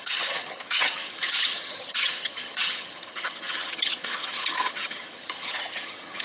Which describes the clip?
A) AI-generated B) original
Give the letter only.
A